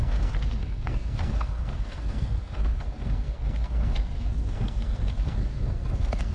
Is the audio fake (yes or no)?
yes